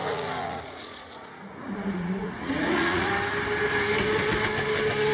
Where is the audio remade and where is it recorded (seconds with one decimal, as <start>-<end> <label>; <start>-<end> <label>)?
0.0-3.1 remade; 3.1-5.1 recorded